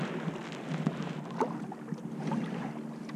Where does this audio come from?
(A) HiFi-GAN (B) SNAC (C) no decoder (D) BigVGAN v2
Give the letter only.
C